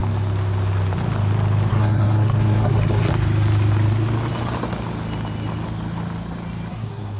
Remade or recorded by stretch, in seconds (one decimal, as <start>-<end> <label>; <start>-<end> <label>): 0.0-1.7 recorded; 1.7-3.1 remade; 3.1-6.7 recorded; 6.7-7.2 remade